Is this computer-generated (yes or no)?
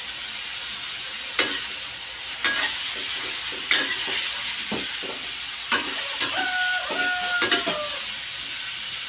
no